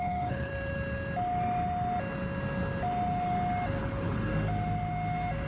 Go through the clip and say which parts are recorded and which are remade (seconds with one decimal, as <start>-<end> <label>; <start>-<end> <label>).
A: 0.0-0.5 remade; 0.5-3.8 recorded; 3.8-4.3 remade; 4.3-5.5 recorded